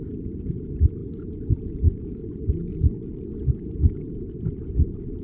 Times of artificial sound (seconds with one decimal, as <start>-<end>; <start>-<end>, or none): 0.0-1.0; 4.1-5.2